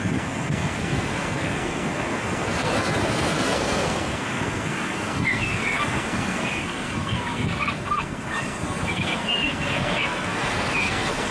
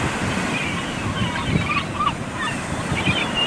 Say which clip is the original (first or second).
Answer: second